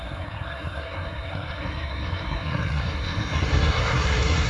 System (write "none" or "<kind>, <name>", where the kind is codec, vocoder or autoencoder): codec, SNAC